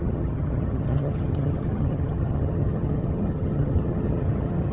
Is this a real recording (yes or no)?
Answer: no